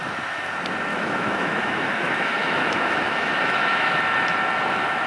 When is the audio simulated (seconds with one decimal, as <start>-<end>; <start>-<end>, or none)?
0.9-4.0

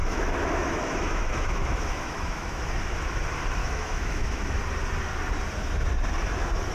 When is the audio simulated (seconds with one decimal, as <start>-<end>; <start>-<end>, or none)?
0.0-2.6; 3.6-4.6

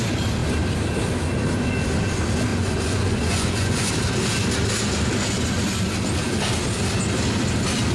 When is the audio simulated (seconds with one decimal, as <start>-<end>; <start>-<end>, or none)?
2.5-3.9

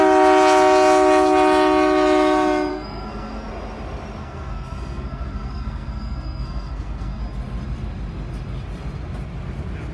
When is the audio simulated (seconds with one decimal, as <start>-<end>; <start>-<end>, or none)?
2.7-3.5; 4.2-7.2